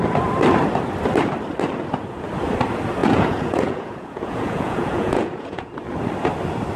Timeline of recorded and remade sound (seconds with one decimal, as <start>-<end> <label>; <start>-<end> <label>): 0.0-3.0 recorded; 3.0-5.7 remade; 5.7-6.8 recorded